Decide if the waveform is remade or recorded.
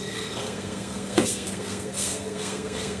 remade